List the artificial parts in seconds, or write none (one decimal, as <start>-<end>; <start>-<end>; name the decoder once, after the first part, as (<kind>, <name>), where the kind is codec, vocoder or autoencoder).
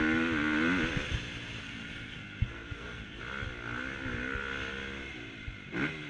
1.6-3.2 (codec, SNAC)